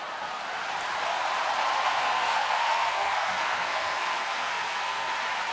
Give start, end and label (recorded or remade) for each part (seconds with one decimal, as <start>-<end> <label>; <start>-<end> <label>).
0.0-1.8 recorded; 1.8-5.1 remade; 5.1-5.5 recorded